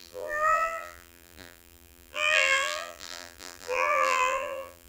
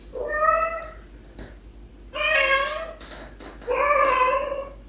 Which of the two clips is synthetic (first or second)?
first